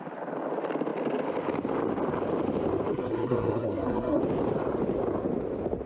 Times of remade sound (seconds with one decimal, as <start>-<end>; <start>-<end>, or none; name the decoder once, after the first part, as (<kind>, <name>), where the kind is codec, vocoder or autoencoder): 2.9-4.2 (codec, SNAC)